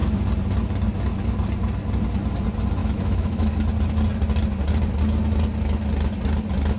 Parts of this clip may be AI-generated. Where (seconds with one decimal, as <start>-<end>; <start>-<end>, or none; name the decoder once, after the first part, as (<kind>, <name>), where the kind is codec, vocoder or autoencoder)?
2.8-3.5 (autoencoder, DAC-VAE)